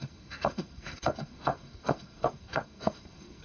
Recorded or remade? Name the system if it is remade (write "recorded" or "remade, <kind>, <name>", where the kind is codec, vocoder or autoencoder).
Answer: remade, codec, SNAC